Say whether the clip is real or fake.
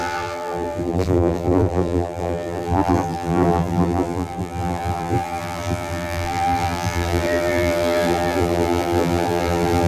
fake